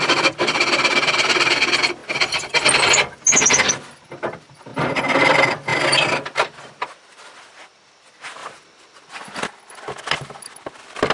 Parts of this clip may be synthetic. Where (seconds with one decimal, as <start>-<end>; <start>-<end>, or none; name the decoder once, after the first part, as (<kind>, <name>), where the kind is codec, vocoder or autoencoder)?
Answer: 0.0-4.7 (vocoder, BigVGAN v2); 5.2-5.7; 6.6-8.4